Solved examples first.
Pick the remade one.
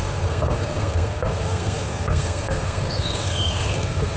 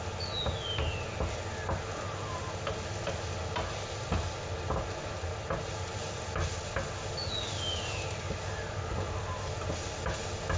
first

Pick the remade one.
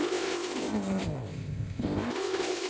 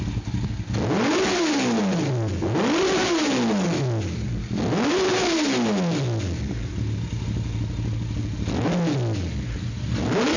first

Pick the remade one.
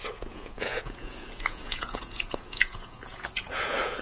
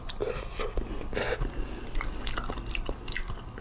first